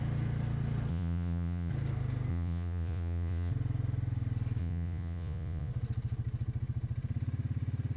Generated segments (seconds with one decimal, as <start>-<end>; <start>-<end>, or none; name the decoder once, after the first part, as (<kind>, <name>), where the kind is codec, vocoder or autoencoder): 0.9-1.7 (vocoder, Vocos); 2.3-3.5; 4.6-5.7